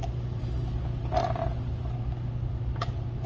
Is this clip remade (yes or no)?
no